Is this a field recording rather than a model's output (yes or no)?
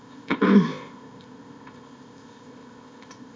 no